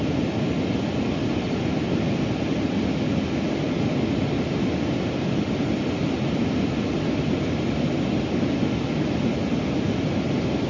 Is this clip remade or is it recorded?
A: recorded